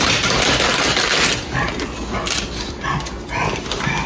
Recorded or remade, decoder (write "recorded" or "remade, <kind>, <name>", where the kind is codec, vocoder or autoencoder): recorded